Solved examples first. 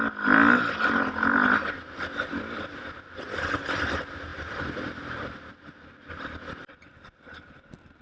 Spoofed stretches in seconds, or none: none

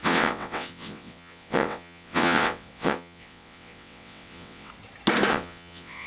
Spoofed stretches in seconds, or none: 0.0-4.7 (vocoder, WaveNeXt); 5.3-6.1

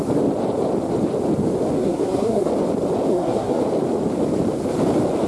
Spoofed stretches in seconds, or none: 1.8-2.5 (codec, SNAC); 3.1-3.6

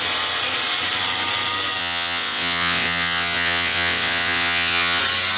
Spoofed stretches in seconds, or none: 1.8-5.0 (vocoder, WaveNeXt)

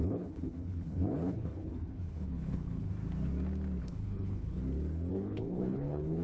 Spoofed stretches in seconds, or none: 0.0-2.9 (codec, HILCodec); 3.8-4.6; 5.1-6.2